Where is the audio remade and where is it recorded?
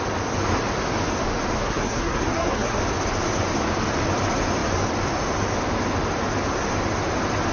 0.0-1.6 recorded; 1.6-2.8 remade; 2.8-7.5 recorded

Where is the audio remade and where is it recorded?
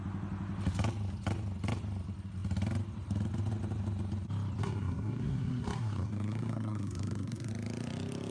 0.0-4.6 recorded; 4.6-7.5 remade; 7.5-8.3 recorded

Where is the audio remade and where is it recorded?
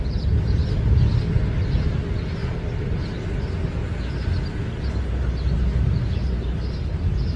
0.0-7.4 recorded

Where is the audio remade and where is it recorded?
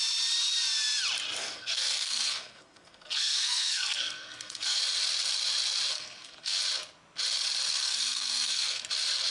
0.0-1.4 recorded; 1.4-4.8 remade; 4.8-5.9 recorded; 5.9-6.6 remade; 6.6-7.8 recorded; 7.8-8.8 remade; 8.8-9.3 recorded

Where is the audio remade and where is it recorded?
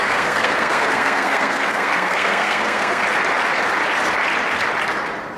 0.0-3.0 remade; 3.0-5.4 recorded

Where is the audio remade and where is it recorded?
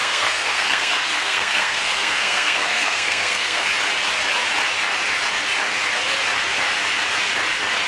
0.0-3.7 remade; 3.7-7.9 recorded